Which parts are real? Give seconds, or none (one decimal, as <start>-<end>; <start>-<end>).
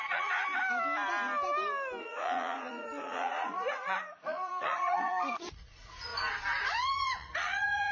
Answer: 0.5-2.0; 6.1-6.6